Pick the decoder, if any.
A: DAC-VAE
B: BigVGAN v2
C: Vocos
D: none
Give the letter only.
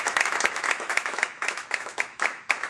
A